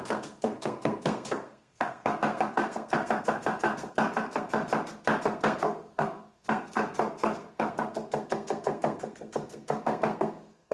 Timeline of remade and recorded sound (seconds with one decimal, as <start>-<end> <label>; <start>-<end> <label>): 0.0-4.7 remade; 4.7-5.2 recorded; 5.2-10.7 remade